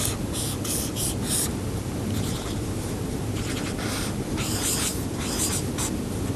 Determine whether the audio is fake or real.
fake